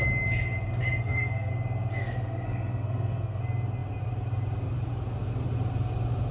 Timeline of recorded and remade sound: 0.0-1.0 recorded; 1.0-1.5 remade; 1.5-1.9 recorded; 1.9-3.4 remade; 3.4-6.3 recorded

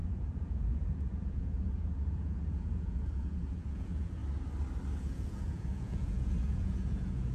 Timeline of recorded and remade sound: 0.0-4.2 remade; 4.2-5.0 recorded; 5.0-7.3 remade